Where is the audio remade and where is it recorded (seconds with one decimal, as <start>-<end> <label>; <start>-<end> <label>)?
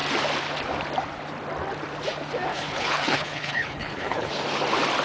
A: 0.0-2.5 recorded; 2.5-4.3 remade; 4.3-5.0 recorded